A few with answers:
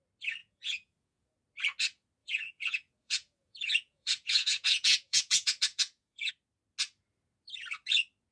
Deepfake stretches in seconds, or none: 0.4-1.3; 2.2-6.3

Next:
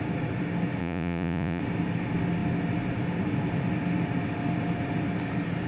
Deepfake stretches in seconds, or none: 0.8-1.6

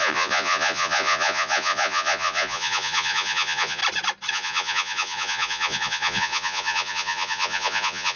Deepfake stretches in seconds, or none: 0.0-3.8; 4.3-8.2

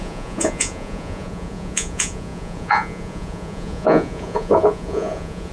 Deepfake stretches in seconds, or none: 0.0-5.5

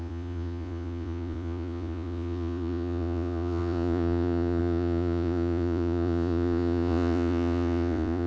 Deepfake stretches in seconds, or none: 0.0-8.3